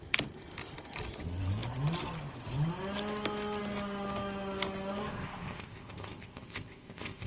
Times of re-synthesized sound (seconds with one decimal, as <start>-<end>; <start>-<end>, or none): 5.1-7.3